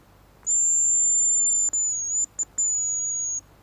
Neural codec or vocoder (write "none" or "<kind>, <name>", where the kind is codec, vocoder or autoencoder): none